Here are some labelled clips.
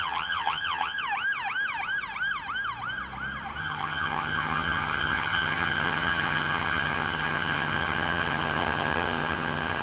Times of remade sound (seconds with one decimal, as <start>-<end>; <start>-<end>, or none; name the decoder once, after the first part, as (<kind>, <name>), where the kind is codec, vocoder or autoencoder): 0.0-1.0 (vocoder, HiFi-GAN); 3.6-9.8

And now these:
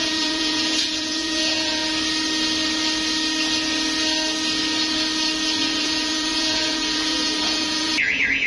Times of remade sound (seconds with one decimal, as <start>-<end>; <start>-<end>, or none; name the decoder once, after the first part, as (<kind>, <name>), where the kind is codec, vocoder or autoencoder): 0.0-1.8 (vocoder, Vocos); 5.8-8.5

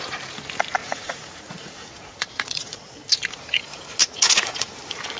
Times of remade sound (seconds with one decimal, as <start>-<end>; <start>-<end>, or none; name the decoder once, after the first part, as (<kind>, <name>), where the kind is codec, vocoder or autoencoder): 0.8-2.9 (vocoder, Vocos); 4.0-4.7